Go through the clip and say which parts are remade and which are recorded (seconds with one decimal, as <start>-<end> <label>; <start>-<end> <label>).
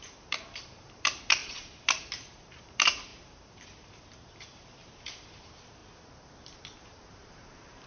0.0-5.8 remade; 5.8-6.8 recorded; 6.8-7.9 remade